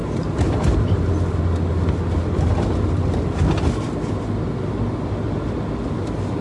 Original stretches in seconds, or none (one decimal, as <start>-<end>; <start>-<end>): 1.0-6.4